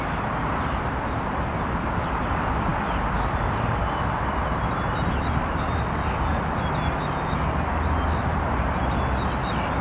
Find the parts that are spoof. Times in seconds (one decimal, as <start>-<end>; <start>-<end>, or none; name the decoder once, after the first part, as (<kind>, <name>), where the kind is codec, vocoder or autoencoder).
none